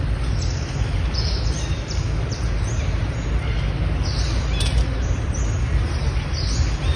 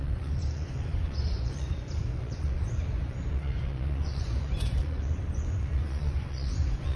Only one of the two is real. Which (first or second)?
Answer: first